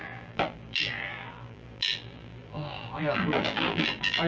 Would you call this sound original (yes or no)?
no